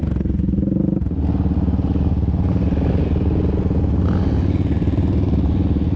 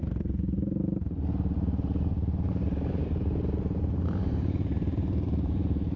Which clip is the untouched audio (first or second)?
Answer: first